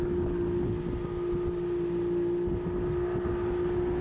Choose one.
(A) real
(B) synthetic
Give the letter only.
A